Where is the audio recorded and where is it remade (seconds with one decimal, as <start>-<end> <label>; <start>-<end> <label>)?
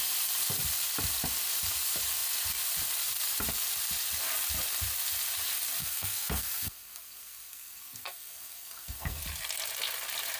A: 0.0-5.8 recorded; 5.8-9.2 remade; 9.2-10.4 recorded